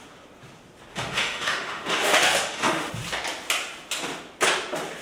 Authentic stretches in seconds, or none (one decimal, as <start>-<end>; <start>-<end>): 0.0-0.9; 2.9-5.0